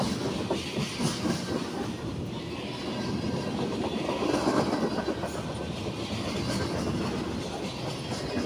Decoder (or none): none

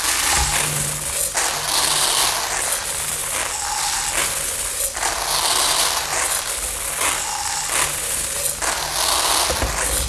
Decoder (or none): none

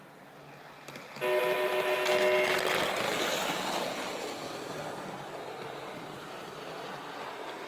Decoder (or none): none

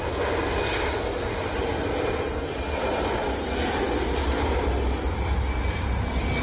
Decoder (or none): none